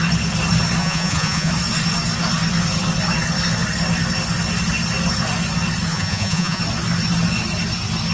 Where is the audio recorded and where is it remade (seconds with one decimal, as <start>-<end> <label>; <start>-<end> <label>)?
0.0-0.8 recorded; 0.8-1.5 remade; 1.5-5.9 recorded; 5.9-6.6 remade; 6.6-8.1 recorded